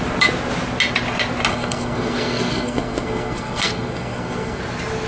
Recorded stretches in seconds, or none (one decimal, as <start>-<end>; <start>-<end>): 0.0-1.5; 4.6-5.1